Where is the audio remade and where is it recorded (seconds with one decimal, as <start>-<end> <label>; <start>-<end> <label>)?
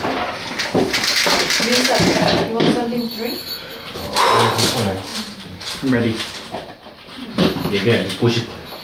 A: 0.0-5.1 recorded; 5.1-7.7 remade; 7.7-8.8 recorded